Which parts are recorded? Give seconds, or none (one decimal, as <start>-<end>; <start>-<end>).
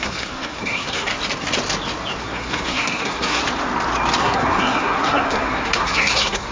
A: 1.1-2.2; 3.4-4.2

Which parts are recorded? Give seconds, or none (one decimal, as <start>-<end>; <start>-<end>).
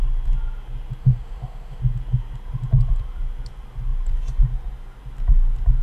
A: 0.0-1.0; 1.8-5.8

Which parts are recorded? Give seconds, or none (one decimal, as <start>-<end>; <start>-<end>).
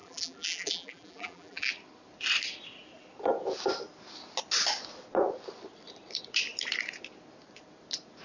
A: 1.7-8.2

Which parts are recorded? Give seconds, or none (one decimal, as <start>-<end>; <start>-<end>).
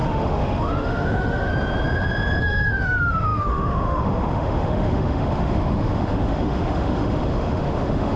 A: 1.5-2.4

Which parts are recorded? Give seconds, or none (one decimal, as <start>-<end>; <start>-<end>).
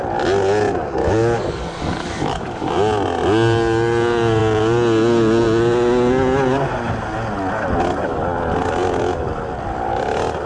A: 0.0-1.0; 2.7-10.5